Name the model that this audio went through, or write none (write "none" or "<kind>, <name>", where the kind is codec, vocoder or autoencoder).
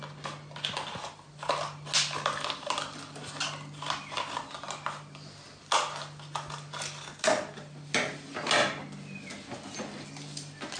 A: none